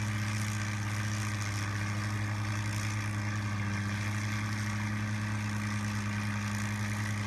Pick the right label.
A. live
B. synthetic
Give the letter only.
A